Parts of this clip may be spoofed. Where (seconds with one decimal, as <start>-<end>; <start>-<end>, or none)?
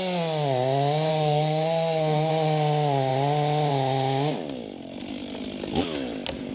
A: 1.1-2.3